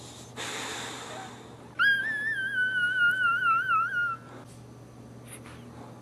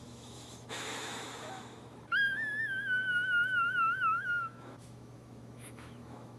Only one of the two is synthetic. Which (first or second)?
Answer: second